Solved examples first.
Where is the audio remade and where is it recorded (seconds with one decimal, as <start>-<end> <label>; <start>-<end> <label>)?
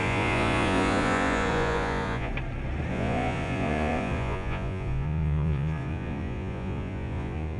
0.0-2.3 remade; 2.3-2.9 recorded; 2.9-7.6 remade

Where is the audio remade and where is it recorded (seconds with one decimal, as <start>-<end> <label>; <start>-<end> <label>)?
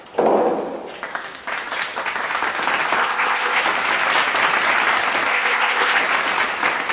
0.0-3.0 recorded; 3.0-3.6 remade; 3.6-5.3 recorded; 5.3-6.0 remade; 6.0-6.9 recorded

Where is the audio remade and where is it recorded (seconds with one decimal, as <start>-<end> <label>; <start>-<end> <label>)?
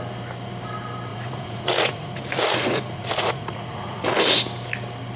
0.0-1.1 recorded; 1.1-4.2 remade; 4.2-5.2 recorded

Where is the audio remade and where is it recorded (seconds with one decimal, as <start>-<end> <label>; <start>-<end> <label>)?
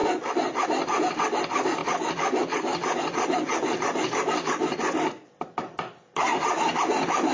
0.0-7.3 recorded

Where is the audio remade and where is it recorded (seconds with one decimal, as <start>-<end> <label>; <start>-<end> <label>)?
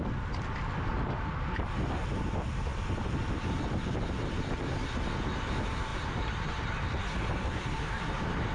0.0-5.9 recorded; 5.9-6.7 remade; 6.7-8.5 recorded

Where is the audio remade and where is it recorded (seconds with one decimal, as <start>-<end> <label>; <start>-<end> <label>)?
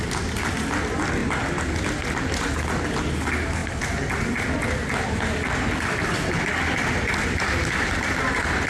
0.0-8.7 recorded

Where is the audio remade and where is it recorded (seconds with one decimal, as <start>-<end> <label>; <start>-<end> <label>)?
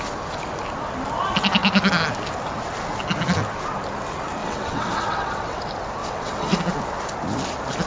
0.0-4.4 recorded; 4.4-5.6 remade; 5.6-6.0 recorded; 6.0-6.6 remade; 6.6-7.9 recorded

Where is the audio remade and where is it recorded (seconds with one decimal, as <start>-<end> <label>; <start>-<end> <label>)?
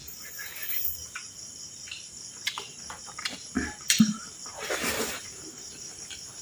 0.0-3.0 recorded; 3.0-6.4 remade